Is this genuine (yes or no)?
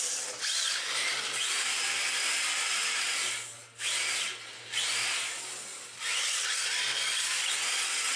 yes